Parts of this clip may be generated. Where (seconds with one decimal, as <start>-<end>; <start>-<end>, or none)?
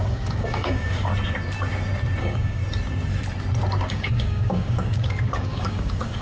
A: 0.0-1.1; 2.2-2.6; 3.9-6.2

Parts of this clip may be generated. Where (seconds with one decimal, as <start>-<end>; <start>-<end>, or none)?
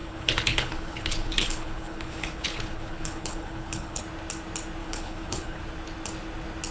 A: 0.0-4.0; 4.8-5.6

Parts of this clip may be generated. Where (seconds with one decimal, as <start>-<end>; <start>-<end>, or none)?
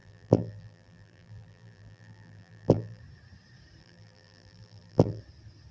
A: 0.0-3.0; 3.8-5.2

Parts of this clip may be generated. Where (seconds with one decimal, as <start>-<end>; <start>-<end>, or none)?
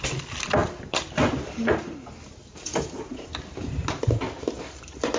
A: 2.4-3.3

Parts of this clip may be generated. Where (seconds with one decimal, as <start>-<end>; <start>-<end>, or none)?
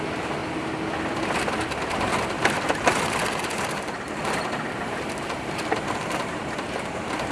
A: 0.0-0.4; 3.4-7.3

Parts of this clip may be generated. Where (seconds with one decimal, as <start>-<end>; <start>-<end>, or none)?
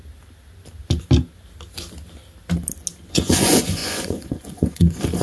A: 3.1-5.2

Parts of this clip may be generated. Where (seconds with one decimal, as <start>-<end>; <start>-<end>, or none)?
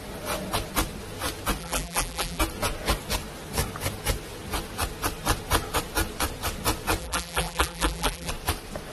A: 1.6-2.4; 7.0-8.3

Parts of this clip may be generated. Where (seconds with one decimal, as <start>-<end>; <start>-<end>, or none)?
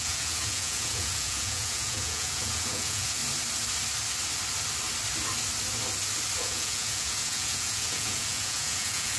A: 0.0-3.2; 6.4-9.2